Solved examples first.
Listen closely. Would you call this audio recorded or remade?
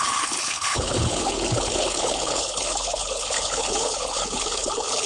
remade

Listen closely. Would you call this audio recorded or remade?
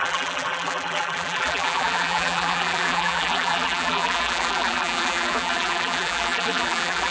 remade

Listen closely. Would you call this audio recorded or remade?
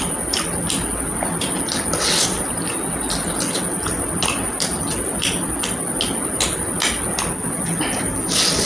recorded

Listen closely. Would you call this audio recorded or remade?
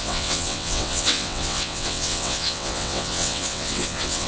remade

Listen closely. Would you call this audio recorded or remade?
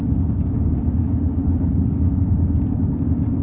remade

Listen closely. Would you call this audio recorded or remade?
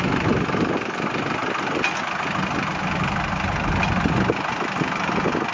recorded